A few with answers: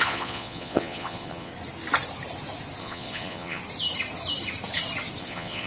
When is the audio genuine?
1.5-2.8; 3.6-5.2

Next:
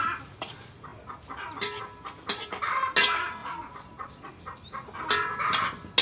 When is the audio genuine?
0.0-3.4; 4.3-6.0

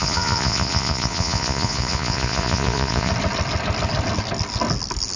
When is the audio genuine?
3.1-5.2

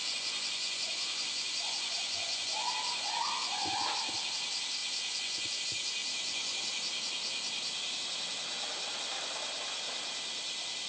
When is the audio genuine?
3.9-4.8; 5.6-6.0; 6.6-10.9